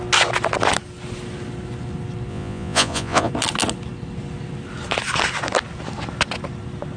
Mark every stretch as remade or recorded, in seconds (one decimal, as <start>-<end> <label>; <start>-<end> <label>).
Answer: 0.0-2.3 recorded; 2.3-3.3 remade; 3.3-7.0 recorded